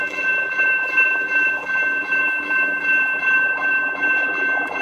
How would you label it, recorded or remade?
remade